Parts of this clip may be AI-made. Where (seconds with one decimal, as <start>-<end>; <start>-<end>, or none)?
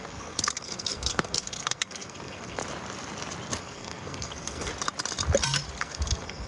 0.0-2.6; 3.6-4.7; 5.8-6.5